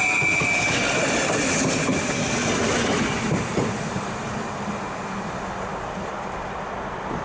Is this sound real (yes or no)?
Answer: yes